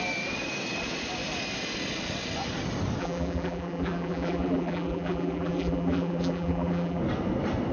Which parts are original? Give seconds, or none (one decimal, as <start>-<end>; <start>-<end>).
0.0-3.0; 7.0-7.7